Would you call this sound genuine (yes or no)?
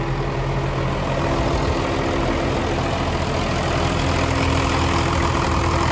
yes